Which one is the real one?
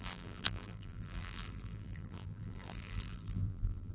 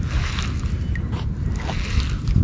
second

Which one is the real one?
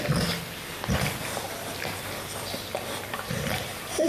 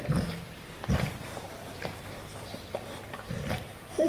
first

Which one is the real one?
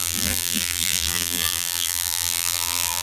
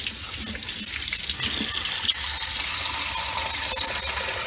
second